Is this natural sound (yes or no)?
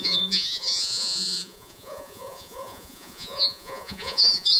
no